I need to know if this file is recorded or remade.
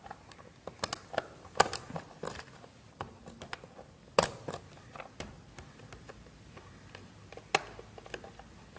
recorded